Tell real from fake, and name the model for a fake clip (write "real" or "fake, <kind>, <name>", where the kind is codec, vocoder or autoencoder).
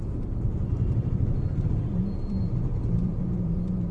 fake, vocoder, BigVGAN v2